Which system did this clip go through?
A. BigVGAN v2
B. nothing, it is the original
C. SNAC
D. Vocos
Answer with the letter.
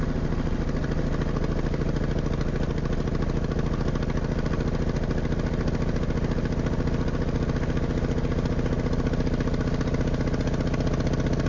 B